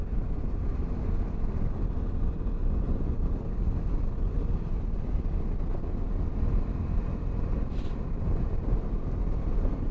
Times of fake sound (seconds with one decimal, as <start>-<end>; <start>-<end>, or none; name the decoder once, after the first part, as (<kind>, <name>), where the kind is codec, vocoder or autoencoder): 2.6-3.2 (vocoder, Vocos)

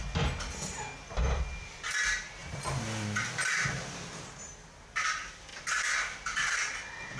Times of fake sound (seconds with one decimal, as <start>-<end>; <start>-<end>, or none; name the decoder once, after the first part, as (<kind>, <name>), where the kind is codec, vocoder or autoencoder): none

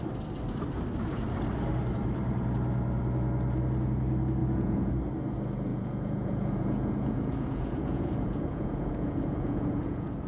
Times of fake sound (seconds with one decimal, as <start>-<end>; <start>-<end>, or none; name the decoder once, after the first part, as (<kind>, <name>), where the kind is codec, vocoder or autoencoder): 4.4-4.9 (vocoder, Vocos); 5.7-10.3